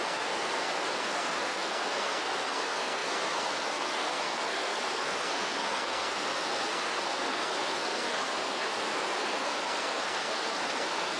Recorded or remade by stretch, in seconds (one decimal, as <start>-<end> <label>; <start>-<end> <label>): 0.0-11.2 remade